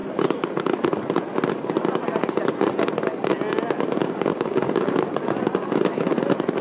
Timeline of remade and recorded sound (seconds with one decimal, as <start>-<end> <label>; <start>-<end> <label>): 0.0-4.0 recorded; 4.0-4.8 remade; 4.8-6.6 recorded

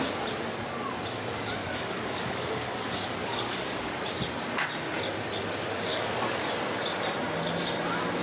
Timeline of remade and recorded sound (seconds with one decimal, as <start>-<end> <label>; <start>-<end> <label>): 0.0-1.6 recorded; 1.6-3.9 remade; 3.9-5.9 recorded; 5.9-6.5 remade; 6.5-8.2 recorded

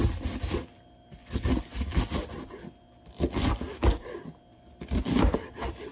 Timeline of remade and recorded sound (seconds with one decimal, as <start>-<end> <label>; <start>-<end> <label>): 0.0-3.7 recorded; 3.7-4.2 remade; 4.2-5.9 recorded

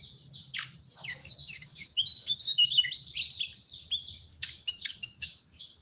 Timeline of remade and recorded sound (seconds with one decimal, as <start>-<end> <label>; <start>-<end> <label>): 0.0-1.2 recorded; 1.2-2.9 remade; 2.9-4.3 recorded; 4.3-5.8 remade

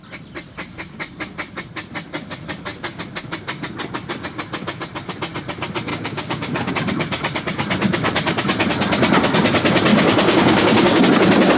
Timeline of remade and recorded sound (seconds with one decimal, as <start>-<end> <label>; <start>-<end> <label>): 0.0-5.9 recorded; 5.9-6.7 remade; 6.7-9.9 recorded; 9.9-11.0 remade; 11.0-11.6 recorded

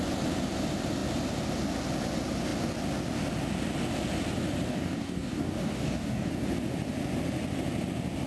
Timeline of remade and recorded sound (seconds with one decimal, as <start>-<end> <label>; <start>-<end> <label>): 0.0-4.7 recorded; 4.7-6.3 remade; 6.3-8.3 recorded